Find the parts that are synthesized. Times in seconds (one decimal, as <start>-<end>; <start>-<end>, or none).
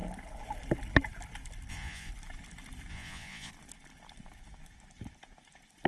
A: 1.7-2.1; 2.9-3.5